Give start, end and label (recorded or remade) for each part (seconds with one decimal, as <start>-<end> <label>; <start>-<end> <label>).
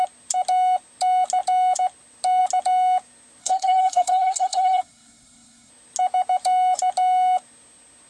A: 0.0-3.4 recorded; 3.4-5.7 remade; 5.7-8.1 recorded